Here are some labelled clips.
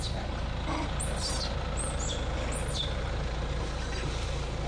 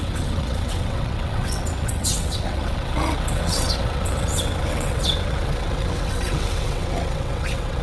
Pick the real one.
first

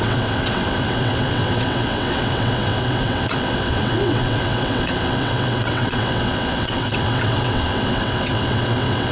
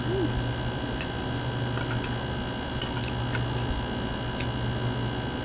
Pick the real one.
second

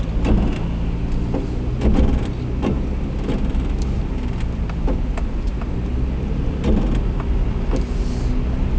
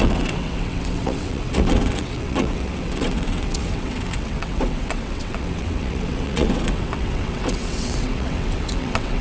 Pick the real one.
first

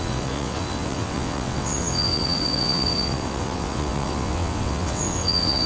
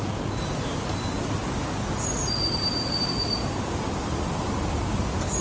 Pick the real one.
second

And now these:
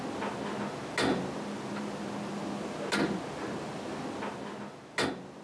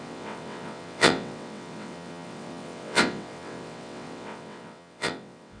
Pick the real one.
first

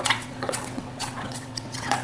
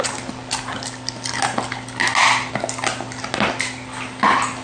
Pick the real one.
second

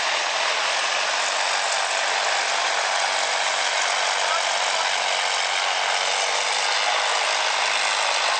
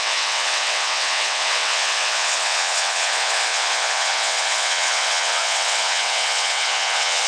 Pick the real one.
first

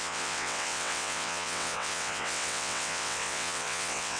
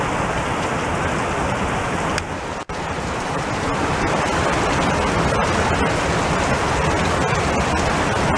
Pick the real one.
second